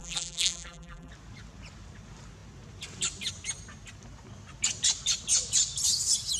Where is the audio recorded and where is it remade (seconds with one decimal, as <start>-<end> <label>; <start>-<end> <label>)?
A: 0.0-1.1 remade; 1.1-6.4 recorded